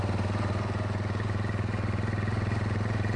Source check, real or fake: real